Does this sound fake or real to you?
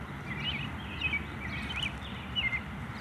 real